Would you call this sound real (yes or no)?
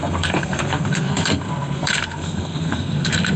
no